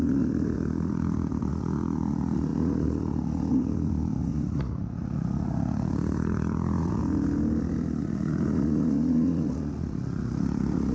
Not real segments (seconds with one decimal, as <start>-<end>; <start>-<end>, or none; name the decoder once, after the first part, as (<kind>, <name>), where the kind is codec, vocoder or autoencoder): 0.0-7.0 (vocoder, Vocos); 8.0-10.9